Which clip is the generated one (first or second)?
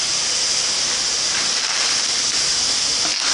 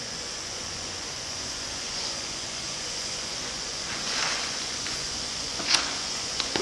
second